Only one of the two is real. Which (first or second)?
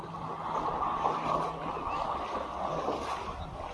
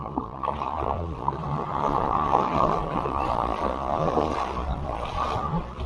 first